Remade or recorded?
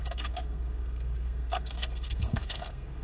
remade